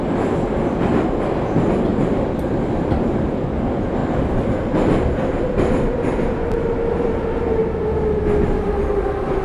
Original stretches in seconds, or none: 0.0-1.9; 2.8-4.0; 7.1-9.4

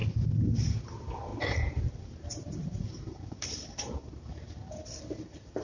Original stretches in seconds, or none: 0.0-0.7

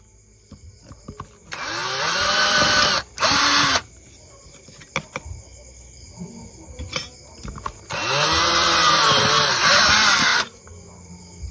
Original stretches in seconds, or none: 0.0-1.8; 2.9-11.5